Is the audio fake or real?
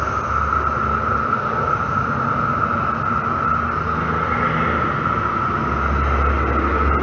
real